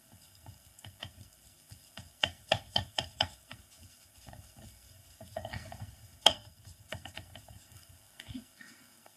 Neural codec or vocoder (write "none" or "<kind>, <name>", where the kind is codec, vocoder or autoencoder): codec, SNAC